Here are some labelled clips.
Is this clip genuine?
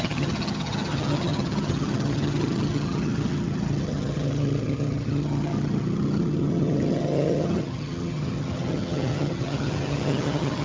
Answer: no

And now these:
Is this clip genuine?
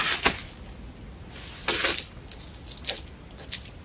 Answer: yes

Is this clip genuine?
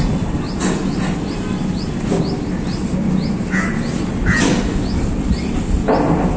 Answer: yes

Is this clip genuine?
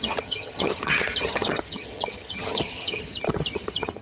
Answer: no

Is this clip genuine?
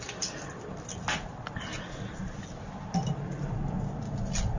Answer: yes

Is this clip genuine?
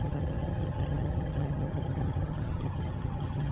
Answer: no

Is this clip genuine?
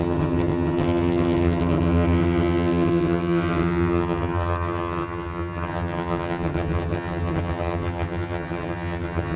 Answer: no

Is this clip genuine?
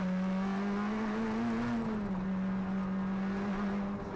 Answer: yes